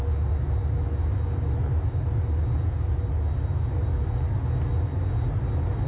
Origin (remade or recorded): recorded